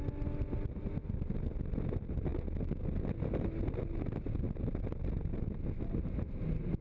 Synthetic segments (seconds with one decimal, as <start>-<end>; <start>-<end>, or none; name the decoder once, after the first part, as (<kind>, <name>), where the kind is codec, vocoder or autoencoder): none